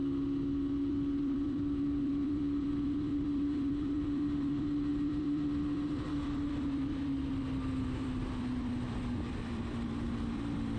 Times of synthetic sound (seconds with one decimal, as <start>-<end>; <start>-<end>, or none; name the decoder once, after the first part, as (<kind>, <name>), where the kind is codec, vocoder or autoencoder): 0.9-10.8 (vocoder, BigVGAN v2)